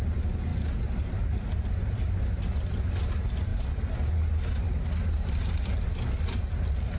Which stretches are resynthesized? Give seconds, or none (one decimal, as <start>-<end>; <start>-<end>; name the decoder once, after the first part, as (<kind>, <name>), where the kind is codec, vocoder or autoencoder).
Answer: none